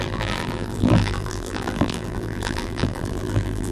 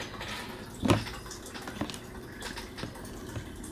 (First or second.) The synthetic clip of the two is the first